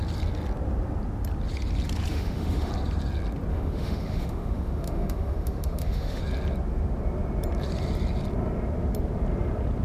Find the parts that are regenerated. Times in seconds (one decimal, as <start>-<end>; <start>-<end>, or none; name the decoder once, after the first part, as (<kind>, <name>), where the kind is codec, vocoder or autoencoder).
2.1-2.7 (autoencoder, DAC-VAE); 3.5-6.2